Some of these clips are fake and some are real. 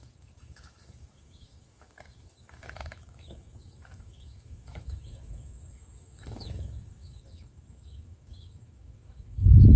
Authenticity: fake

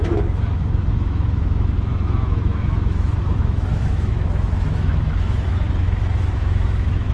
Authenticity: fake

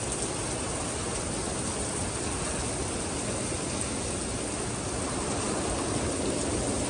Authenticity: real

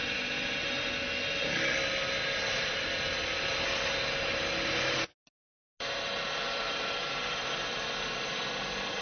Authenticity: real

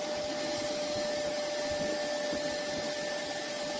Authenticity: real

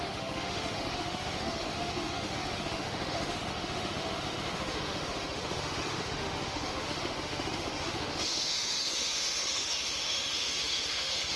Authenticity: fake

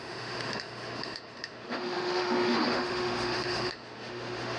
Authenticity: fake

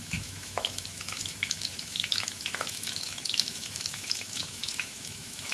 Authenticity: fake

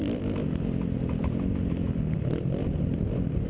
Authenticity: real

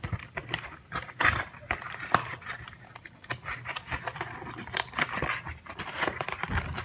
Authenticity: real